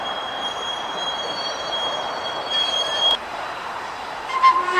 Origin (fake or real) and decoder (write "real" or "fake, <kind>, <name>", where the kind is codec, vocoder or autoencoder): fake, vocoder, BigVGAN v2